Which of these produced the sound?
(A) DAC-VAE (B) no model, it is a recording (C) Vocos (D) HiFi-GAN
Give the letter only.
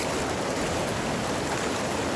B